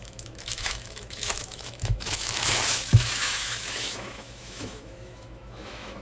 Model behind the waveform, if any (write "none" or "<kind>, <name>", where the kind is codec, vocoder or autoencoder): autoencoder, DAC-VAE